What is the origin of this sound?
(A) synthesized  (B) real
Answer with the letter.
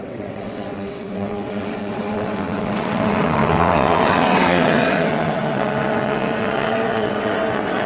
A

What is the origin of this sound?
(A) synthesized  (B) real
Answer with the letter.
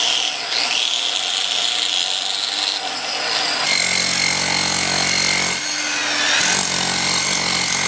B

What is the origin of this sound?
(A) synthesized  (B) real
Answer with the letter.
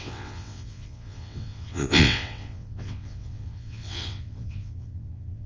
A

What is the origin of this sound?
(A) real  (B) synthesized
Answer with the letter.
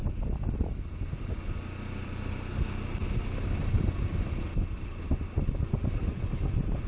A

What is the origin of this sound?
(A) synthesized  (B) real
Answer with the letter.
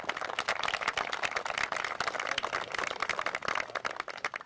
B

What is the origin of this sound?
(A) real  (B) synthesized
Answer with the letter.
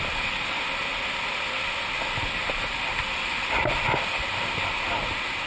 A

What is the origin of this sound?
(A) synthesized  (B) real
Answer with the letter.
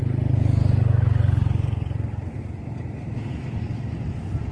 B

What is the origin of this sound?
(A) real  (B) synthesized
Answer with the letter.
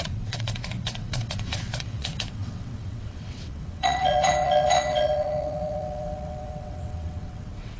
B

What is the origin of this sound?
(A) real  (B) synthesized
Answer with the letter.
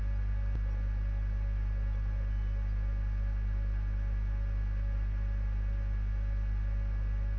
A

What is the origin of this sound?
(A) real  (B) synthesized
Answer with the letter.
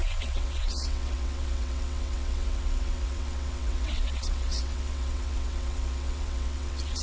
B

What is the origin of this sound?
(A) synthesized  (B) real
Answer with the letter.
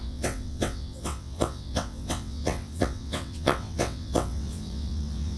A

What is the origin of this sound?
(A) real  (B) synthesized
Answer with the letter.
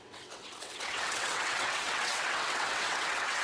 B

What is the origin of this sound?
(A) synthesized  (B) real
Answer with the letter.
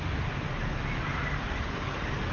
B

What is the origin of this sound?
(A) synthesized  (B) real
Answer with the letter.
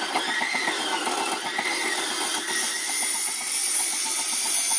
B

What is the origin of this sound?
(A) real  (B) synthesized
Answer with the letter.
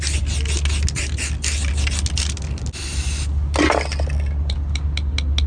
A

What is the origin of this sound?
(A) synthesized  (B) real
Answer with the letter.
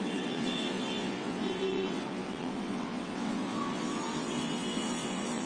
A